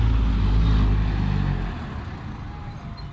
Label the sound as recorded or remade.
recorded